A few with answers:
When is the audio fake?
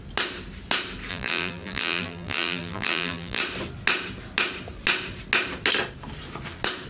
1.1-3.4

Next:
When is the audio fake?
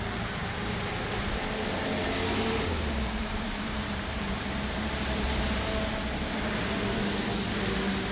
0.4-1.3; 3.2-5.4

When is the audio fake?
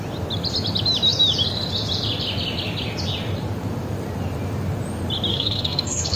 5.3-6.2